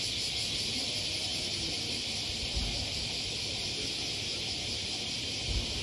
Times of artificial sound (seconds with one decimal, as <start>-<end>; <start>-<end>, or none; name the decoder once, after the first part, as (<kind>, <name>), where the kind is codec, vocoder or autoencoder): none